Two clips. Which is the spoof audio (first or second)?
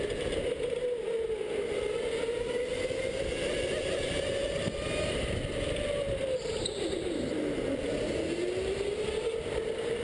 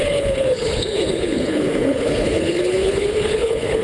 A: second